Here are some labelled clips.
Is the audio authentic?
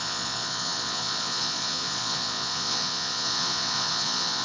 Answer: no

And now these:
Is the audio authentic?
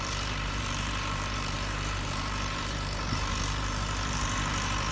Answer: no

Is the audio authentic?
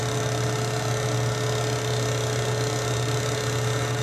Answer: yes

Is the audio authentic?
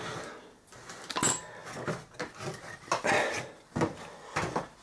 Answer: yes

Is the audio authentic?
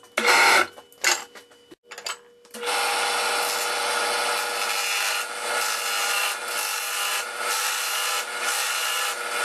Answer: yes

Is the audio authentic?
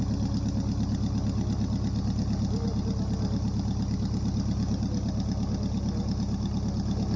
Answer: yes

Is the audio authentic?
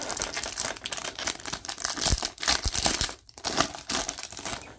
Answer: no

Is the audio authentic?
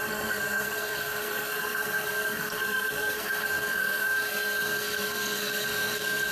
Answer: no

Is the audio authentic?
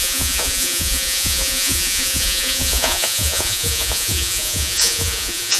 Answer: no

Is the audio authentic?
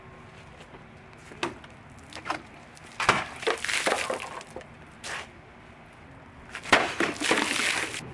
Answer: yes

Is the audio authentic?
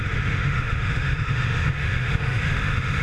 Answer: no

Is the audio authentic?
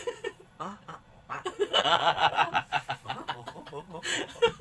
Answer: no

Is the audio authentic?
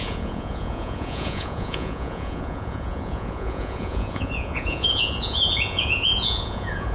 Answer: no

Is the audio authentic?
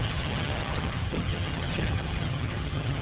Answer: no